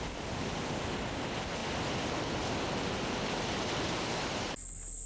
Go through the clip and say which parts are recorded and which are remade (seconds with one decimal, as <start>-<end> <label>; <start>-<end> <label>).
0.0-5.1 recorded